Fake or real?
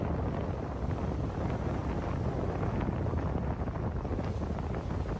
real